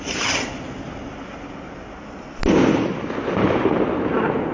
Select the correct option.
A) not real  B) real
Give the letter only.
B